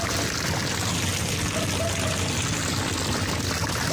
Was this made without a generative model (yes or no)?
yes